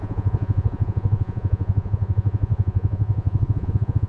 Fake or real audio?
fake